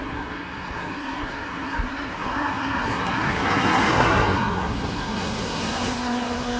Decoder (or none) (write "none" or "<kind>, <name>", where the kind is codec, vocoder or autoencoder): codec, SNAC